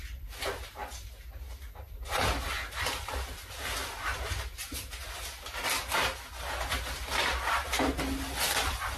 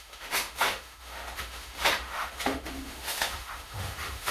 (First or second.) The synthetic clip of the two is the second